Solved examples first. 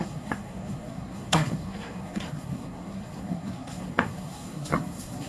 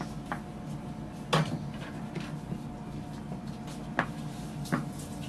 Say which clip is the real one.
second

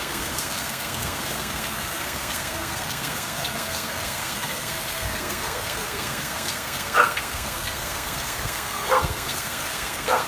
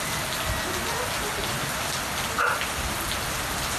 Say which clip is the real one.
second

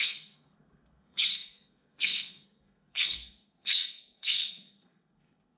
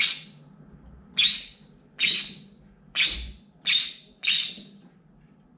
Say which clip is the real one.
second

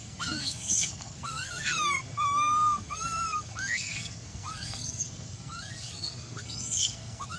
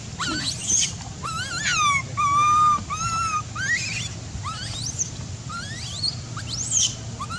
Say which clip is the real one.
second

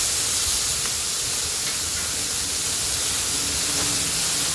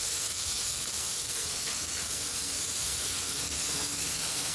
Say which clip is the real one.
first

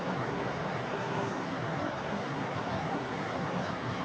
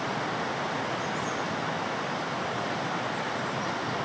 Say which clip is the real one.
second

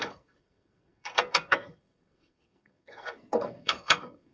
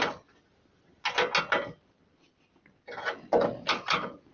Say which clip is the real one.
second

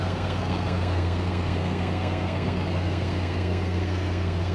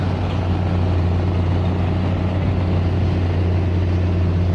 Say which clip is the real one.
second